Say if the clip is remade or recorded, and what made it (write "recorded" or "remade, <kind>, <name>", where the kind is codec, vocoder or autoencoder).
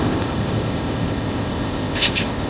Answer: remade, codec, ZipCodec